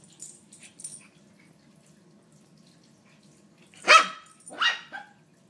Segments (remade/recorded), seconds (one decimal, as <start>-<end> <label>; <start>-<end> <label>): 0.0-5.5 recorded